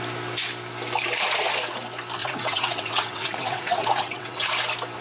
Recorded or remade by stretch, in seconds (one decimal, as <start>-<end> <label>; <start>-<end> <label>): 0.0-2.2 recorded; 2.2-4.5 remade; 4.5-5.0 recorded